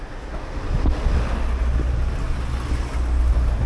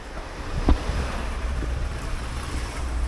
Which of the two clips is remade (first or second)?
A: second